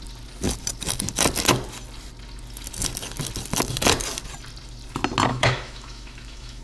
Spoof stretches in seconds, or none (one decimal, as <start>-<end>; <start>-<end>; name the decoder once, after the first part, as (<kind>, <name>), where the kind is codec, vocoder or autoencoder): 5.3-6.6 (autoencoder, DAC-VAE)